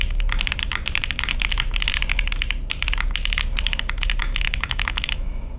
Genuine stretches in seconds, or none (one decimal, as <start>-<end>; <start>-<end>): 0.0-4.2